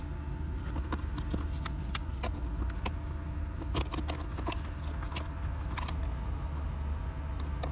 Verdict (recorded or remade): recorded